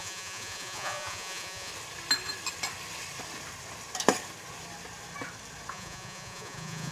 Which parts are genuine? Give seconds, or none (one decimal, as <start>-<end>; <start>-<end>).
1.7-5.7